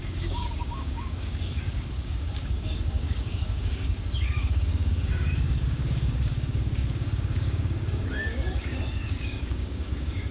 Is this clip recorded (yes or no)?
no